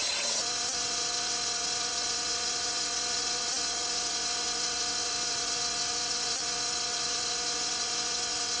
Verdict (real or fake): fake